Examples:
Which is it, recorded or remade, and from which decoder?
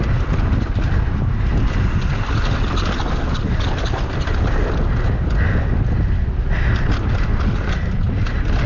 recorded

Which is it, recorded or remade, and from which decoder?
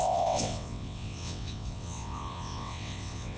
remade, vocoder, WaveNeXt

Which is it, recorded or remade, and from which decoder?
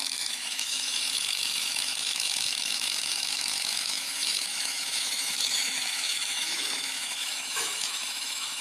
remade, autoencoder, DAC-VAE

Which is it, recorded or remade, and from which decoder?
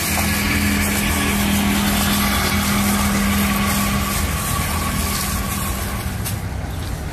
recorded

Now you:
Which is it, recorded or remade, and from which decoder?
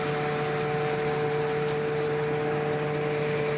recorded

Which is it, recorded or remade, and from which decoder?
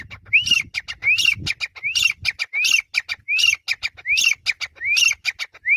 recorded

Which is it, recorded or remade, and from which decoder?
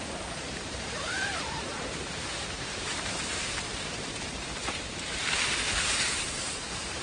remade, vocoder, BigVGAN v2